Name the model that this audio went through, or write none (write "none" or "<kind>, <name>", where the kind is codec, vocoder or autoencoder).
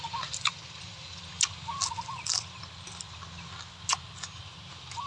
none